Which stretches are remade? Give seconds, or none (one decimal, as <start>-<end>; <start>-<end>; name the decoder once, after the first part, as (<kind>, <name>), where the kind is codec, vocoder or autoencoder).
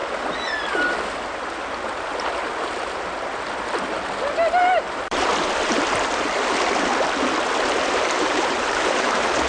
4.6-5.3 (vocoder, BigVGAN v2); 7.9-9.5